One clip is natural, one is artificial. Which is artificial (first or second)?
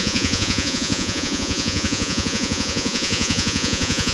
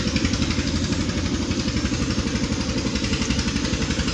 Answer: first